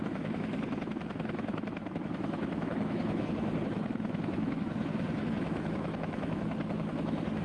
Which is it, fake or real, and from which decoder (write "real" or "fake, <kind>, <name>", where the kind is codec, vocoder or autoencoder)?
fake, autoencoder, DAC-VAE